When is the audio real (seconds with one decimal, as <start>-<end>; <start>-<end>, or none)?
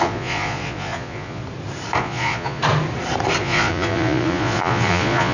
1.4-2.0; 2.6-3.4